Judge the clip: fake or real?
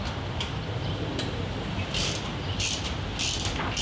real